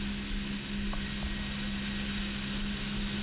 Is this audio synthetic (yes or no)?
no